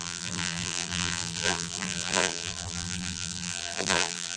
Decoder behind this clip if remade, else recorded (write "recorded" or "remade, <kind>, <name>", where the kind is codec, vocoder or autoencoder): remade, vocoder, BigVGAN v2